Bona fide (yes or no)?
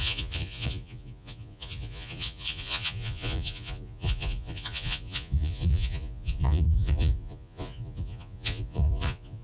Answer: no